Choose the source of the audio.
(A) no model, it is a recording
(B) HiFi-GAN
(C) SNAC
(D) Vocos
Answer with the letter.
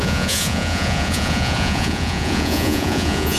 D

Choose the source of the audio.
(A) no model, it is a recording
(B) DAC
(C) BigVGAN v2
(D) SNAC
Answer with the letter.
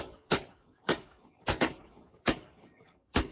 B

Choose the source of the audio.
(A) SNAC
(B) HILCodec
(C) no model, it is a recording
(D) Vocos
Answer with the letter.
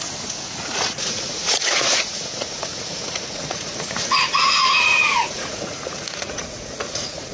D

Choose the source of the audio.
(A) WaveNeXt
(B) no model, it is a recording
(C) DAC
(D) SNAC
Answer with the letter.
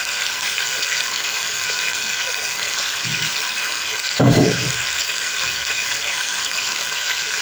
D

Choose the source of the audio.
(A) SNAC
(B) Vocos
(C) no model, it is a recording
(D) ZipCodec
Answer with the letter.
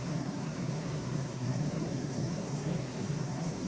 A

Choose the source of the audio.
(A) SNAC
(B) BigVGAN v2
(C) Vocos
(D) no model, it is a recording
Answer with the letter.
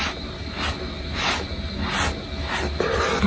D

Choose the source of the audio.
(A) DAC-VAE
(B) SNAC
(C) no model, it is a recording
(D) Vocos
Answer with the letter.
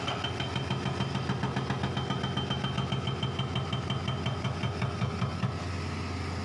C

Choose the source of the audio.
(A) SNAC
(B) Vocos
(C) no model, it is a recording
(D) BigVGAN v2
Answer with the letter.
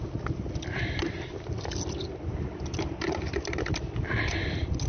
C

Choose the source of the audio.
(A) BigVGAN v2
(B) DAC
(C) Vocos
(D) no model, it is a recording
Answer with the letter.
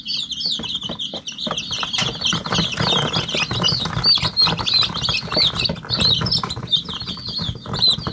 D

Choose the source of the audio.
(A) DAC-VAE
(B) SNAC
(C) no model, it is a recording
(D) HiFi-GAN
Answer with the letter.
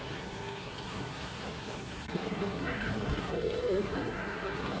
B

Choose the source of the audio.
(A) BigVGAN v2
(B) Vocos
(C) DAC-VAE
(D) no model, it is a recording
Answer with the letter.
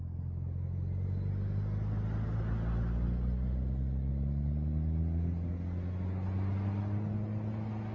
D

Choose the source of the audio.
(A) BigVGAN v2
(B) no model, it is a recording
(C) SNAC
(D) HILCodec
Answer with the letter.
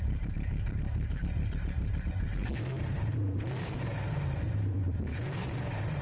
A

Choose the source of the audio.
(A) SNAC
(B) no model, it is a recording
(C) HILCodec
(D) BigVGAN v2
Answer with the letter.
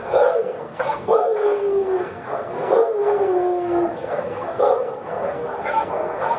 A